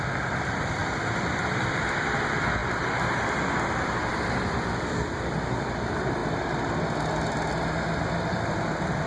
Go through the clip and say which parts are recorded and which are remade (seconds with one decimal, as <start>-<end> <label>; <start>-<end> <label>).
0.0-6.2 remade; 6.2-9.1 recorded